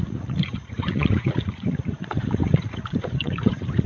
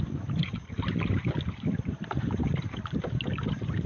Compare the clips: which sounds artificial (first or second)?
first